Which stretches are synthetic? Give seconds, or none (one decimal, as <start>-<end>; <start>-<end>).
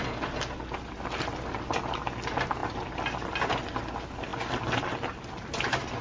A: none